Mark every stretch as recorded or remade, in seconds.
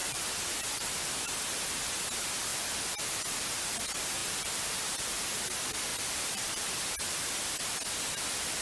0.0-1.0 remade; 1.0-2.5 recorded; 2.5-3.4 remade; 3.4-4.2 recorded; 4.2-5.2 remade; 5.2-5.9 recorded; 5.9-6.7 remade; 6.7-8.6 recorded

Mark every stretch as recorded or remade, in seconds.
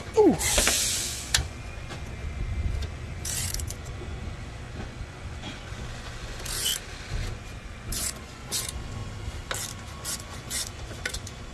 0.0-6.7 remade; 6.7-7.3 recorded; 7.3-9.0 remade; 9.0-9.9 recorded; 9.9-11.5 remade